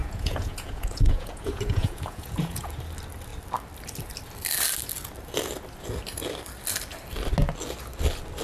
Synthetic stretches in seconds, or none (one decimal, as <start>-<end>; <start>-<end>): 0.0-2.7